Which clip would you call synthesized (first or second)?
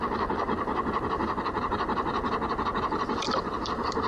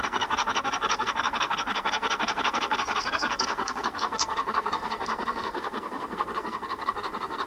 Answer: second